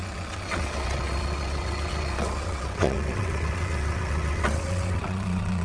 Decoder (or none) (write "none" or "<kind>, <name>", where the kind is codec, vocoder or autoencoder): vocoder, WaveNeXt